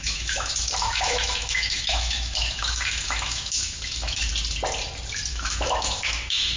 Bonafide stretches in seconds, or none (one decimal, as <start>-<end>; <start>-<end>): 4.3-5.3